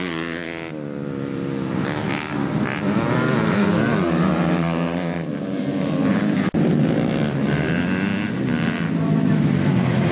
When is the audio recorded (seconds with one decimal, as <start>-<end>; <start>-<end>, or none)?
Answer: none